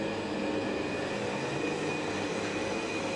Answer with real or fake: real